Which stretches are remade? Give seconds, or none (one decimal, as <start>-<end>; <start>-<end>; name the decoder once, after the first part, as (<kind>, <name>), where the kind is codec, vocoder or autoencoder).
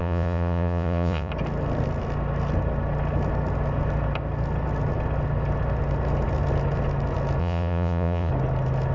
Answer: 0.0-1.3 (vocoder, Vocos); 7.4-8.3